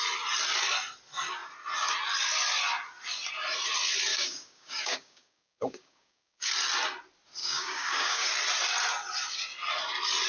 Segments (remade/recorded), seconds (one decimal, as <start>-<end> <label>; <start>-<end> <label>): 0.0-4.1 recorded; 4.1-6.5 remade; 6.5-7.4 recorded; 7.4-8.3 remade; 8.3-10.3 recorded